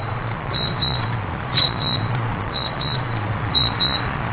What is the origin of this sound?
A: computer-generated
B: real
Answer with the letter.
A